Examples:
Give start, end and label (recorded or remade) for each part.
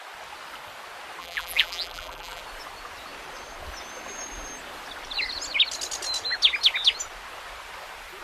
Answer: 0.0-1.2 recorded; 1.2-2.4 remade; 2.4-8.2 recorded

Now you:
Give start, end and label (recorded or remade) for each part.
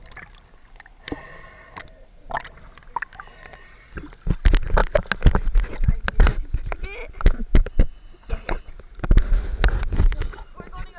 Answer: 0.0-7.7 recorded; 7.7-8.7 remade; 8.7-11.0 recorded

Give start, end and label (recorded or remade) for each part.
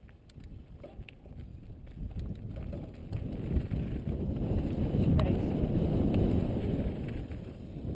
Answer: 0.0-1.5 recorded; 1.5-2.4 remade; 2.4-3.0 recorded; 3.0-7.9 remade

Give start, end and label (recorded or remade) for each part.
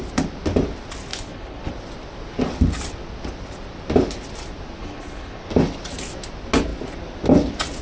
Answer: 0.0-1.1 recorded; 1.1-1.7 remade; 1.7-4.8 recorded; 4.8-5.5 remade; 5.5-7.8 recorded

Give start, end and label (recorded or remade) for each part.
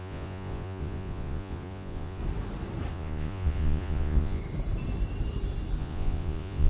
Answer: 0.0-2.2 remade; 2.2-2.9 recorded; 2.9-4.4 remade; 4.4-5.8 recorded; 5.8-6.7 remade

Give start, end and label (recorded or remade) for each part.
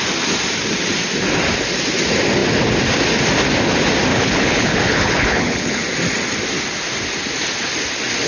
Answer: 0.0-4.1 recorded; 4.1-5.8 remade; 5.8-8.3 recorded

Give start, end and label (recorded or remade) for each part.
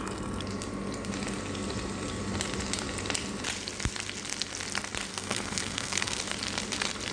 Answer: 0.0-5.1 recorded; 5.1-6.2 remade; 6.2-7.1 recorded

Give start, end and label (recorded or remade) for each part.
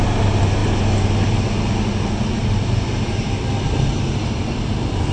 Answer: 0.0-5.1 recorded